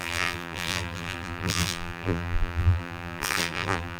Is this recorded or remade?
remade